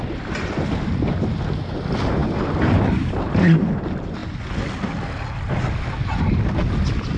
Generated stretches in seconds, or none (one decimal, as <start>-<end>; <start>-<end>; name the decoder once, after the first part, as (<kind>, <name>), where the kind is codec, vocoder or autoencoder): none